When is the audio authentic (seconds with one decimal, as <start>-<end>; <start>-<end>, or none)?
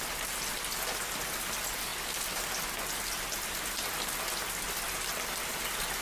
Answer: 0.0-6.0